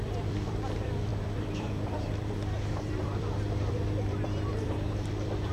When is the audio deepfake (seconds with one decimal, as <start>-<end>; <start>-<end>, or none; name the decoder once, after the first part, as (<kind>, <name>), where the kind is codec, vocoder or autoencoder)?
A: 0.0-5.5 (vocoder, BigVGAN v2)